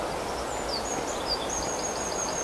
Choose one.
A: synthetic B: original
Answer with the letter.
B